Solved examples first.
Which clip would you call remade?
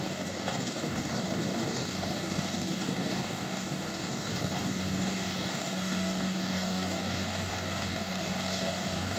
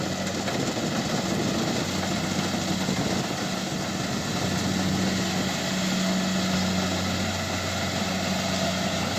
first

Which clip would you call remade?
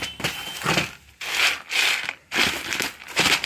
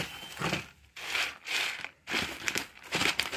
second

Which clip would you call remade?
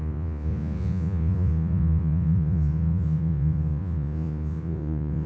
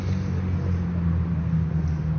first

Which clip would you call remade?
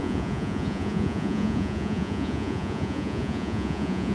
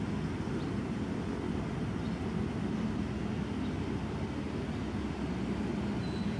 first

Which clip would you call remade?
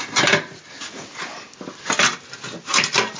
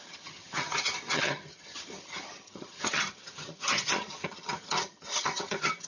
second